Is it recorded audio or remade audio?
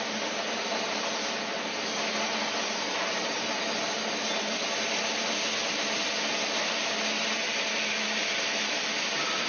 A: recorded